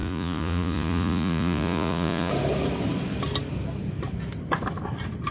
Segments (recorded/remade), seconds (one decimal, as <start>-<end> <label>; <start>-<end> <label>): 0.0-2.3 remade; 2.3-5.3 recorded